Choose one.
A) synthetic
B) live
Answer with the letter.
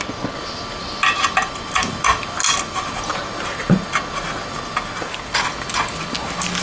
B